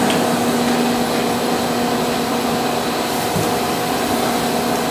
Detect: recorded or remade recorded